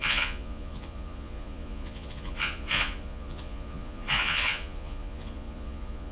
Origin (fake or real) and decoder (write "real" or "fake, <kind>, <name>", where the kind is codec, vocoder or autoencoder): fake, vocoder, Vocos